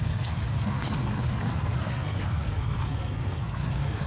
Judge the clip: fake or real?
fake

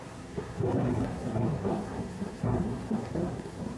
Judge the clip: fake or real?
fake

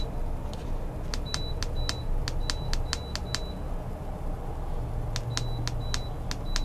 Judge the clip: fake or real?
real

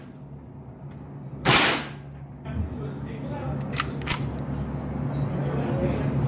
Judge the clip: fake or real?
real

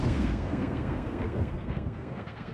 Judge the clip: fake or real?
fake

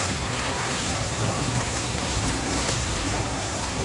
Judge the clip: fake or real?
fake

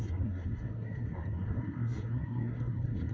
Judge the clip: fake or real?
fake